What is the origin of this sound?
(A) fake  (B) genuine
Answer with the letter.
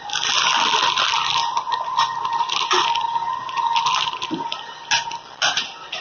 B